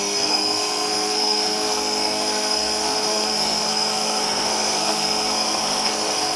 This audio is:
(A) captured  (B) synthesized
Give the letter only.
B